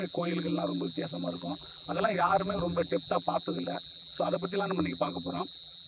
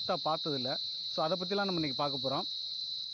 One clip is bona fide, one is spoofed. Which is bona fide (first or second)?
second